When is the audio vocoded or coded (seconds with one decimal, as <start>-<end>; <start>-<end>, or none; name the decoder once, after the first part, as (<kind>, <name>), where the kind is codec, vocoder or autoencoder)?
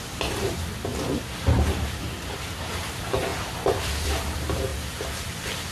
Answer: 0.0-0.9 (vocoder, BigVGAN v2); 2.6-5.7